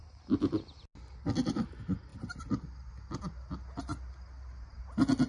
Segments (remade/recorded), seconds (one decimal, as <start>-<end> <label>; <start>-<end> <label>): 0.0-5.3 recorded